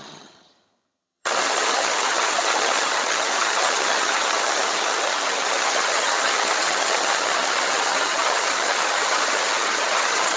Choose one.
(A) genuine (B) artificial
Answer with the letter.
B